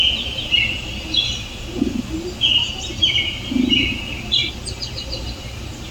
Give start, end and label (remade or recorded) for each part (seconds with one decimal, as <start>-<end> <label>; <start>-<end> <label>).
0.0-2.6 recorded; 2.6-3.4 remade; 3.4-5.9 recorded